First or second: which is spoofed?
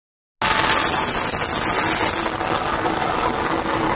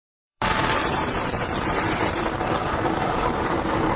second